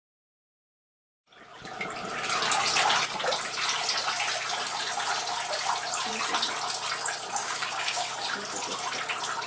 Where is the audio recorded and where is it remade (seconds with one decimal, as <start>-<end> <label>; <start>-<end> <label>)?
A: 0.0-7.4 recorded; 7.4-8.1 remade; 8.1-9.5 recorded

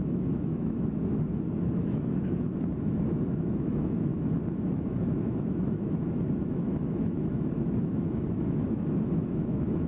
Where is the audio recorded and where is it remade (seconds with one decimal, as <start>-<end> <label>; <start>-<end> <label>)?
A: 0.0-4.1 remade; 4.1-4.8 recorded; 4.8-9.9 remade

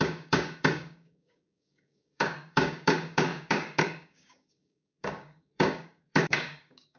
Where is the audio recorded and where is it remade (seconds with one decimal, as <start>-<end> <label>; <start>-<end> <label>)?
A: 0.0-7.0 remade

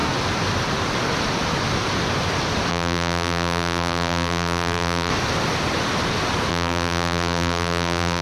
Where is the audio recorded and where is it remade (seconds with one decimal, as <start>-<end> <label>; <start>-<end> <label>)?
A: 0.0-2.7 recorded; 2.7-5.1 remade; 5.1-6.5 recorded; 6.5-8.2 remade

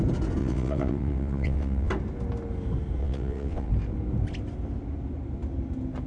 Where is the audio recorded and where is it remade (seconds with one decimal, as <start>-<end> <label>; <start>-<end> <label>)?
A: 0.0-0.4 recorded; 0.4-1.9 remade; 1.9-3.0 recorded; 3.0-3.7 remade; 3.7-6.1 recorded

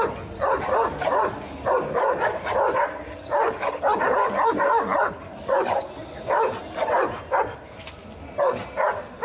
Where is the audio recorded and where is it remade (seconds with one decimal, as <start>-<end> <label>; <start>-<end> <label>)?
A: 0.0-9.2 recorded

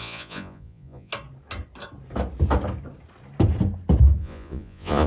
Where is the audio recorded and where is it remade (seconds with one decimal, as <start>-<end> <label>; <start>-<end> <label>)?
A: 0.0-1.1 remade; 1.1-4.2 recorded; 4.2-5.1 remade

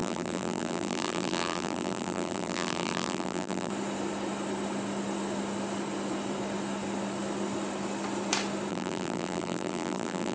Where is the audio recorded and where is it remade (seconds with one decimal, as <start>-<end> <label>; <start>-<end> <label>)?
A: 0.0-3.7 remade; 3.7-8.7 recorded; 8.7-10.3 remade